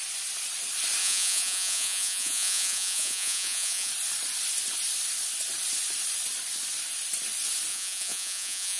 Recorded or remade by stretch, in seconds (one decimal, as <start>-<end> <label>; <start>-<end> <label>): 0.0-1.0 recorded; 1.0-3.9 remade; 3.9-7.7 recorded; 7.7-8.8 remade